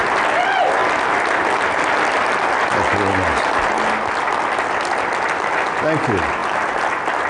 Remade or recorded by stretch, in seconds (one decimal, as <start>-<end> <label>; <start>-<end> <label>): 0.0-7.3 recorded

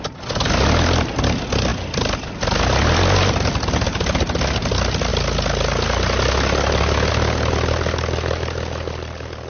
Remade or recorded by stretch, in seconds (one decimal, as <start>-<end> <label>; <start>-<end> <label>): 0.0-9.5 recorded

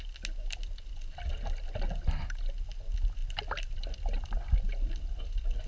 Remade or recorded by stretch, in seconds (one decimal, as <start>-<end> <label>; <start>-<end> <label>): 0.0-5.7 recorded